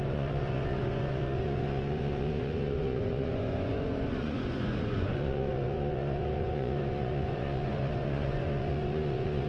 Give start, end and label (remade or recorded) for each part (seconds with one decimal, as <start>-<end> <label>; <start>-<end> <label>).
0.0-9.5 remade